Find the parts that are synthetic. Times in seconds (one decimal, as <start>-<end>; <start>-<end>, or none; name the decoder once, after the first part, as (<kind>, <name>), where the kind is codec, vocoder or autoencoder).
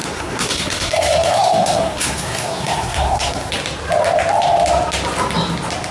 0.0-3.5 (codec, SNAC)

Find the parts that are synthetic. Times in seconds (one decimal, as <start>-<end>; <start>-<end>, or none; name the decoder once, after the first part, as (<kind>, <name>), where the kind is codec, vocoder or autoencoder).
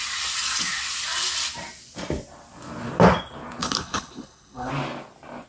3.6-4.7 (codec, HILCodec)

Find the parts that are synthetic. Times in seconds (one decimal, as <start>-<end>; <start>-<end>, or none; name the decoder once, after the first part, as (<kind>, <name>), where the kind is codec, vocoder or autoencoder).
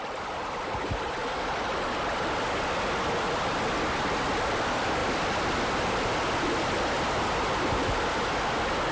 none